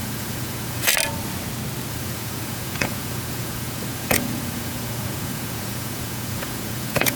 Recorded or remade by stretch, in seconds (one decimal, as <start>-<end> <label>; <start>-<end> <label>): 0.0-0.9 remade; 0.9-1.9 recorded; 1.9-7.2 remade